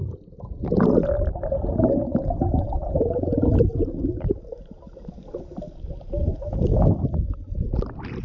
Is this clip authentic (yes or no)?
yes